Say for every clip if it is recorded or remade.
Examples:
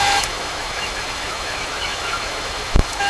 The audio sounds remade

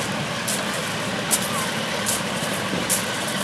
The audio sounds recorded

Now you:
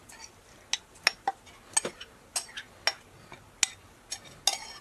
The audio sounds recorded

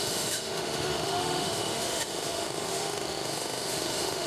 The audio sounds remade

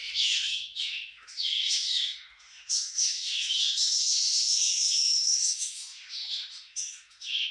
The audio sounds remade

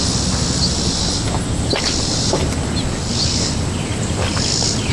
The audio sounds recorded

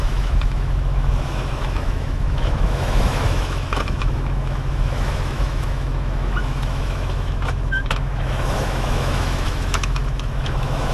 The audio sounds remade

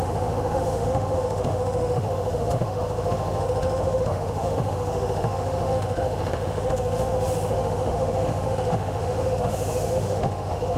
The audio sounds remade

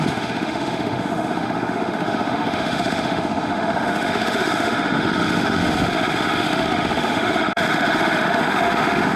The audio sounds remade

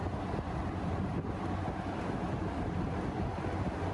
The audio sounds recorded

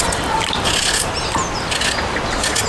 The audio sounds recorded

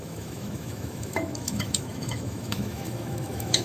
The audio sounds remade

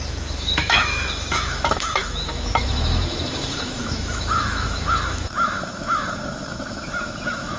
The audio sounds remade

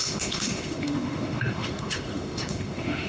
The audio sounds remade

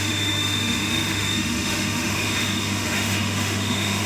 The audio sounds remade